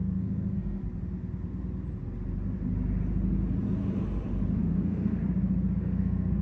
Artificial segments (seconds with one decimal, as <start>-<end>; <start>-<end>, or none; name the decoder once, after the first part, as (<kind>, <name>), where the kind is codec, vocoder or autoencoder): 0.0-0.8 (codec, SNAC); 4.6-5.2; 5.8-6.4